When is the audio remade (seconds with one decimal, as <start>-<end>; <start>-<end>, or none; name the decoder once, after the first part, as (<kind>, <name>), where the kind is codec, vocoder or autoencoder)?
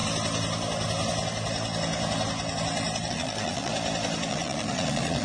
3.1-3.7 (vocoder, Vocos); 4.3-5.2